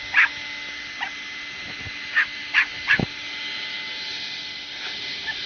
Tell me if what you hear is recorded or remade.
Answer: recorded